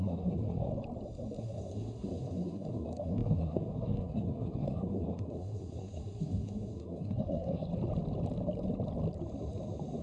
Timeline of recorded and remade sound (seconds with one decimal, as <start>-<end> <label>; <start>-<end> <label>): 0.0-0.7 remade; 0.7-1.4 recorded; 1.4-7.7 remade; 7.7-10.0 recorded